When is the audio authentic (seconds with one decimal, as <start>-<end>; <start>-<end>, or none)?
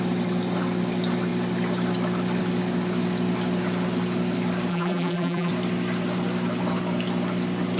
0.0-4.7; 5.5-7.8